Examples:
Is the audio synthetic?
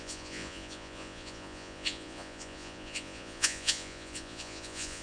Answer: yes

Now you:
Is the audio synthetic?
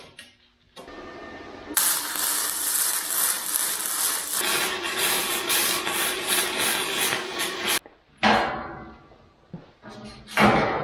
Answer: no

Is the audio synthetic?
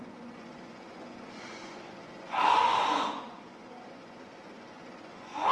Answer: yes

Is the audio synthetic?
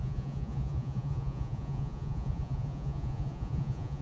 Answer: yes